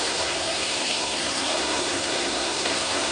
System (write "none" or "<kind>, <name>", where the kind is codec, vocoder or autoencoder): codec, SNAC